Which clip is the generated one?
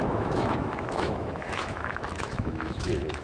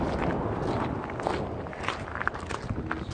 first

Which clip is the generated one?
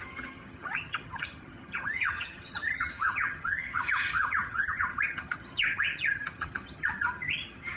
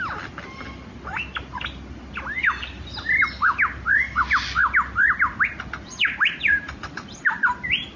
first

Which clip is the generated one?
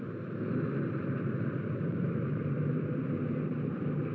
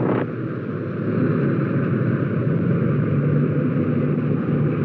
first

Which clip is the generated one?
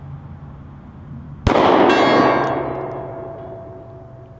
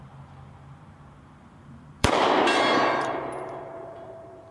second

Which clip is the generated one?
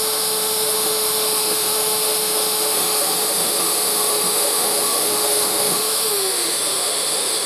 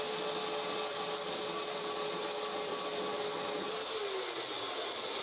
first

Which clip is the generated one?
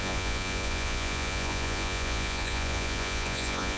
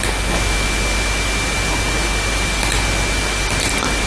first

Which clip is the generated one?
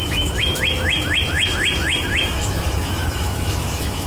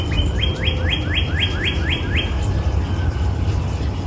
first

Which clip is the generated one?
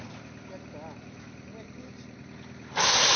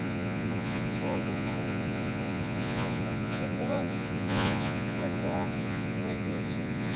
second